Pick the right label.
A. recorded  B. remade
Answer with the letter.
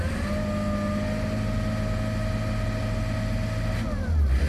A